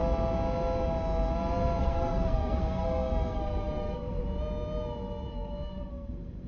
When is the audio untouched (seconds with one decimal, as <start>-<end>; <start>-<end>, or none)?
0.0-1.8; 4.2-5.3